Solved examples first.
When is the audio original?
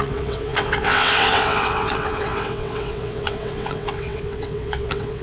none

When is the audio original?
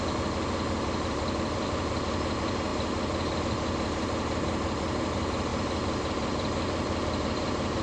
0.0-7.8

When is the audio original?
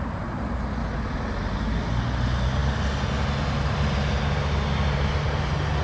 0.0-5.8